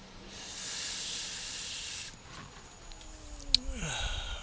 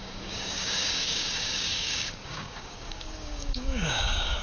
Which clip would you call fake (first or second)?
second